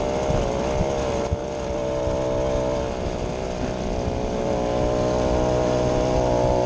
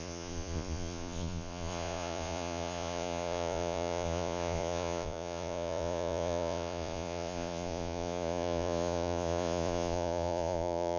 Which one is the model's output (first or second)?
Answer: second